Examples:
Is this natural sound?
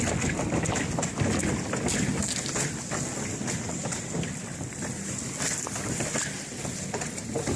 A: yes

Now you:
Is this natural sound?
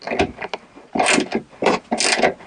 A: yes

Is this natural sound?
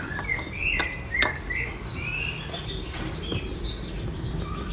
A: no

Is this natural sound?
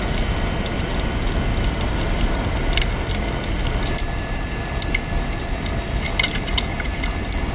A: yes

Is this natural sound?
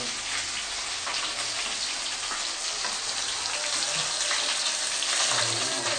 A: yes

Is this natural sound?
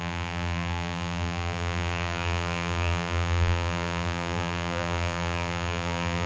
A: no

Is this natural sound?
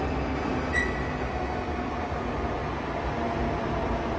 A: yes